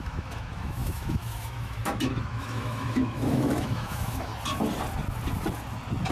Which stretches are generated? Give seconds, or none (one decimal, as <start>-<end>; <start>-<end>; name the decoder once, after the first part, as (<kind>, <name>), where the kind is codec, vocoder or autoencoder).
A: 0.0-4.3 (autoencoder, DAC-VAE)